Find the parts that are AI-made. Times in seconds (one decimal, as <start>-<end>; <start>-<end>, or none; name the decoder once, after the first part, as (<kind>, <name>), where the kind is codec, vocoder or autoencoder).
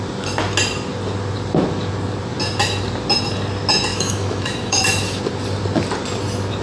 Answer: 3.9-5.2 (autoencoder, DAC-VAE)